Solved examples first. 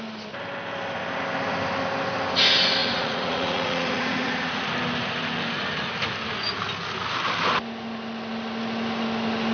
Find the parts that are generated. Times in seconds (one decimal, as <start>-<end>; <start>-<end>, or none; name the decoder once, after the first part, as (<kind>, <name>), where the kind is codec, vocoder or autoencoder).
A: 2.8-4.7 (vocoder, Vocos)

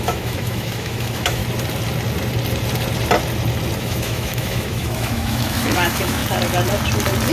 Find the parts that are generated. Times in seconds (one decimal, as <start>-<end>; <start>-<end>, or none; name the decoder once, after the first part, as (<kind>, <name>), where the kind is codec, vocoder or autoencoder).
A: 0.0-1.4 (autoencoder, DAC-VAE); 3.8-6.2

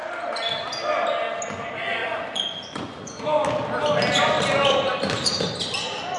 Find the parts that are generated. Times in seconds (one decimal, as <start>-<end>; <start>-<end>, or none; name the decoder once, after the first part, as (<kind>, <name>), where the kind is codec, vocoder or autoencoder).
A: 2.0-3.2 (vocoder, Vocos)

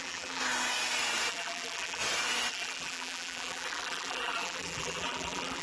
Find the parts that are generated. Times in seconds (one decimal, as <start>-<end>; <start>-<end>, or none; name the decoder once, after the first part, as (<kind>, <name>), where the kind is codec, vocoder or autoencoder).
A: 0.0-0.4 (vocoder, BigVGAN v2); 1.3-2.0; 2.5-5.6